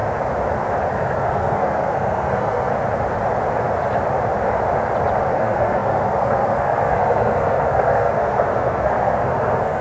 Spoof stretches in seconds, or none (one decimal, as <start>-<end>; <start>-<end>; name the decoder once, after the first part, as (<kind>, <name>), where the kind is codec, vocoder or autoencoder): 0.9-2.7 (codec, SNAC); 5.3-9.8